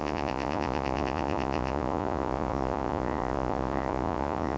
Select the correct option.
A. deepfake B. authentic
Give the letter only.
A